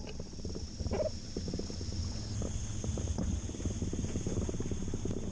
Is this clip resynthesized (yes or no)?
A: no